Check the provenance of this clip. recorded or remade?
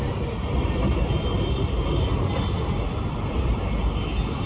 recorded